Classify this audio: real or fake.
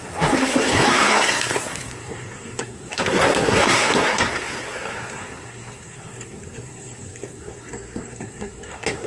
fake